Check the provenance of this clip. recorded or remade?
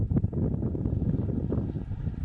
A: recorded